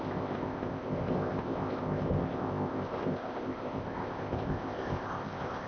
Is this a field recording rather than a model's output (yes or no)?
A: no